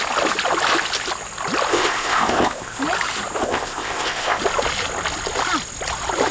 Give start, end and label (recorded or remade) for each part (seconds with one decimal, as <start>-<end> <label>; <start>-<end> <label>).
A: 0.0-1.7 recorded; 1.7-2.8 remade; 2.8-3.4 recorded; 3.4-4.4 remade; 4.4-6.3 recorded